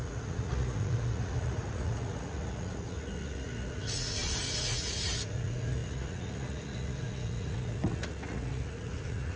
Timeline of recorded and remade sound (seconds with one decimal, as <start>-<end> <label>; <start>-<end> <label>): 0.0-9.4 remade